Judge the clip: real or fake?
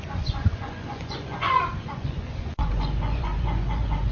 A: fake